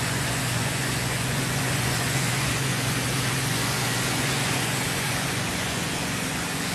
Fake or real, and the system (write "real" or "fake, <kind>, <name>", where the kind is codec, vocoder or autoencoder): fake, vocoder, Vocos